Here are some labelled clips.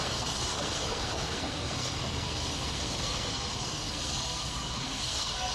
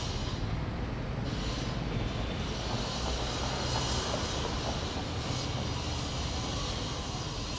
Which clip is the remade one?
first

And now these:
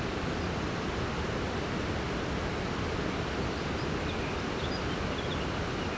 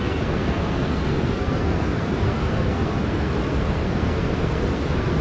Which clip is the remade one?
second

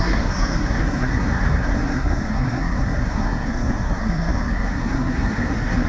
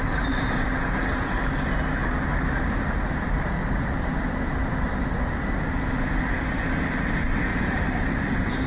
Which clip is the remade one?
first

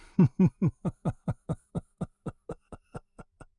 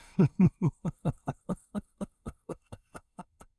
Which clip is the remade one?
second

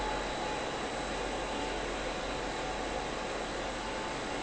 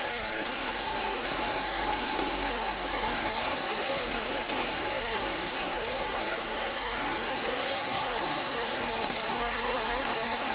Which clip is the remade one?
second